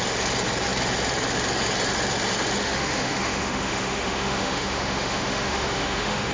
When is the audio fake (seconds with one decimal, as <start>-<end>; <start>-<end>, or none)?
2.6-6.3